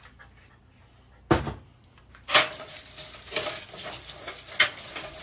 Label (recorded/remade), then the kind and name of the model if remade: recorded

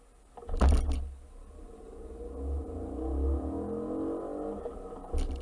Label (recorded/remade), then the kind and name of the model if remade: recorded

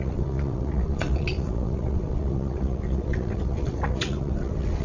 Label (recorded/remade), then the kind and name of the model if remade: remade, vocoder, WaveNeXt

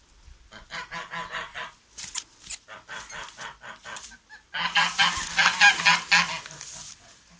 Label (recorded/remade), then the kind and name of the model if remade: recorded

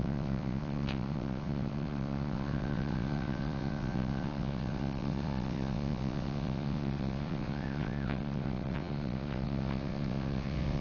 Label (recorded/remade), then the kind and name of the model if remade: remade, vocoder, WaveNeXt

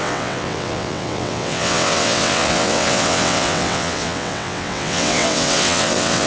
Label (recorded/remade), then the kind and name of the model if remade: remade, vocoder, WaveNeXt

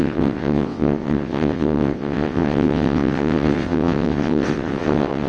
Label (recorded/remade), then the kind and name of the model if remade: remade, vocoder, WaveNeXt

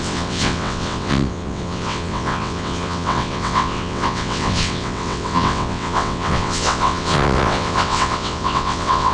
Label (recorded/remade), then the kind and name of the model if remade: remade, vocoder, WaveNeXt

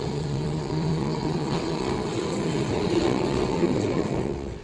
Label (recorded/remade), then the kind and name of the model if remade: remade, vocoder, WaveNeXt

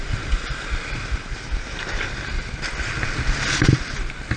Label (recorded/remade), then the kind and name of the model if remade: recorded